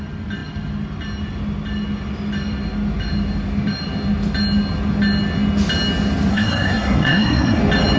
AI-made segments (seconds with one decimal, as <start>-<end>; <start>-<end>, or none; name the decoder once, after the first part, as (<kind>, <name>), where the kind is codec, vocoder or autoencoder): 6.3-7.6 (codec, SNAC)